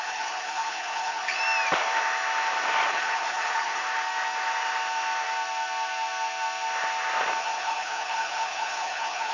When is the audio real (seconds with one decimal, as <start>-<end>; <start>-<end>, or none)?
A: 1.4-2.9; 3.8-7.4